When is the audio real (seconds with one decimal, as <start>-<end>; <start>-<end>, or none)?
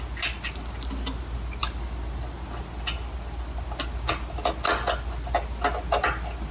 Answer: 0.0-6.5